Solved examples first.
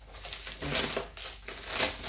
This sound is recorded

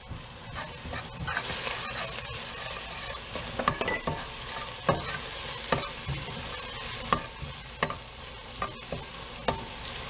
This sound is recorded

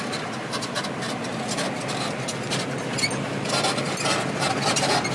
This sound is recorded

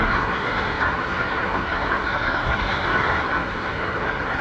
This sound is remade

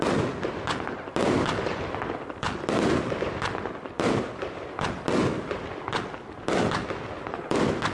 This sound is recorded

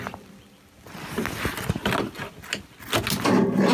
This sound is recorded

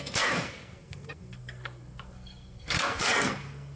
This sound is remade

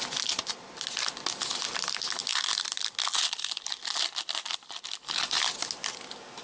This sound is recorded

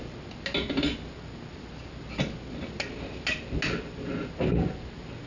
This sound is recorded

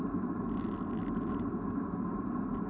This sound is recorded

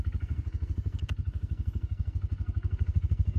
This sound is remade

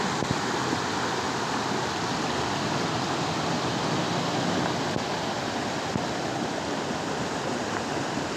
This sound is recorded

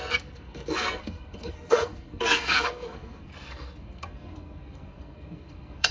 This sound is remade